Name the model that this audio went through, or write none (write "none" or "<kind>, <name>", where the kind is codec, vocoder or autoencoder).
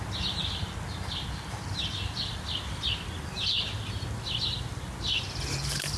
none